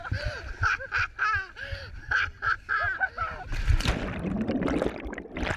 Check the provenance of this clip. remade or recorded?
recorded